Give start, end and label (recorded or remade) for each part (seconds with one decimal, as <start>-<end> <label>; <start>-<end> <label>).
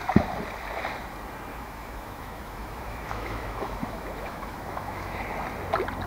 0.0-1.5 recorded; 1.5-5.1 remade; 5.1-6.1 recorded